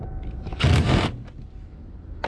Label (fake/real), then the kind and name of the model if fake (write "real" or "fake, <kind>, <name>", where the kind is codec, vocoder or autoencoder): real